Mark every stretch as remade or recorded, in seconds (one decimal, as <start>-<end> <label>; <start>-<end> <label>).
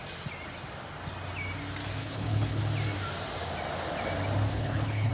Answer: 0.0-2.0 recorded; 2.0-2.6 remade; 2.6-4.5 recorded; 4.5-5.1 remade